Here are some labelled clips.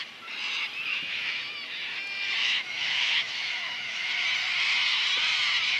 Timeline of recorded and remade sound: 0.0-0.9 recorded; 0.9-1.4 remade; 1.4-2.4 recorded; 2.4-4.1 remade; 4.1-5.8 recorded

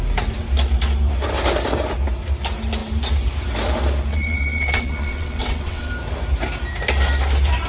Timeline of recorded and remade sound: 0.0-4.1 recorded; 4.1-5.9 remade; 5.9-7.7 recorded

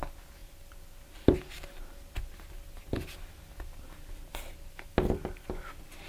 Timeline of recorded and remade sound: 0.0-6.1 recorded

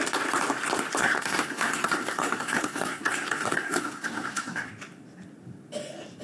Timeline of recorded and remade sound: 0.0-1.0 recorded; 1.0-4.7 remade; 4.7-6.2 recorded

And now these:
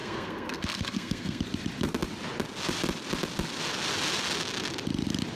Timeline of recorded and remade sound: 0.0-1.4 remade; 1.4-5.4 recorded

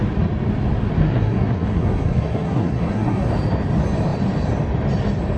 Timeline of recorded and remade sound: 0.0-1.0 recorded; 1.0-3.3 remade; 3.3-5.4 recorded

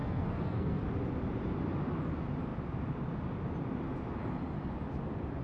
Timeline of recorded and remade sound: 0.0-0.8 remade; 0.8-5.4 recorded

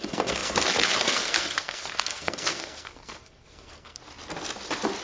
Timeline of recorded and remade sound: 0.0-4.0 remade; 4.0-5.0 recorded